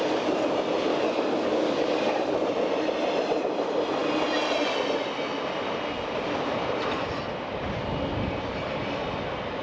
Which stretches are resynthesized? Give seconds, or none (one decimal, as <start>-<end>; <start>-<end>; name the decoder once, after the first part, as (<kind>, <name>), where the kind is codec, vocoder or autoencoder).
0.9-2.2 (codec, DAC)